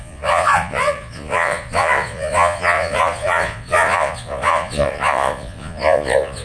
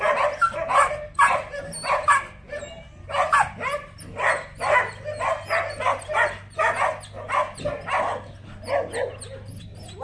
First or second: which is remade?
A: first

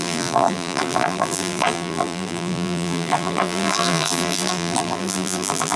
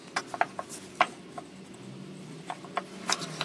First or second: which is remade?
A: first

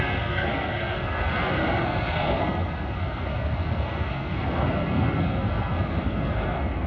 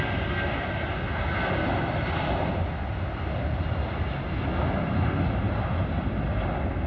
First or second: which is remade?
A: first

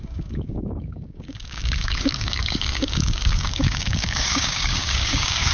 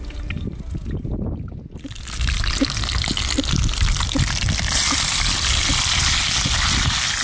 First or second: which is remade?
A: first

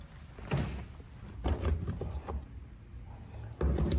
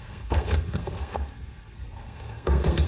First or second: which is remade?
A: second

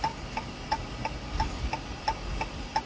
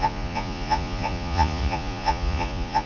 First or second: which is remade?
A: second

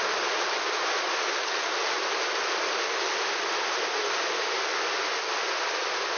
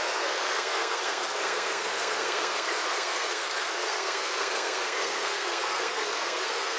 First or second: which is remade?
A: second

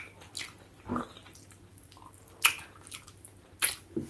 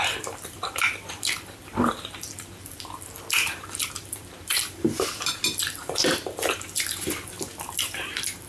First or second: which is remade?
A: second